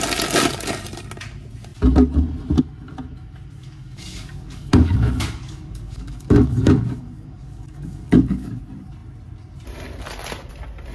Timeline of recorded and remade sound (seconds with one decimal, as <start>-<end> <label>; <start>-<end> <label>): 0.0-3.6 recorded; 3.6-8.6 remade; 8.6-10.9 recorded